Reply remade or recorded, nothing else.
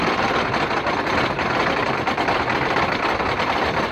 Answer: remade